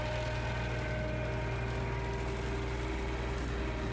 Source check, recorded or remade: recorded